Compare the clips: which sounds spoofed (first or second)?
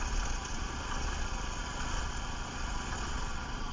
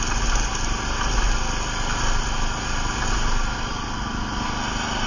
first